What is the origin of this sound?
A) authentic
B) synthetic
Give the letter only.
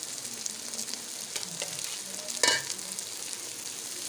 A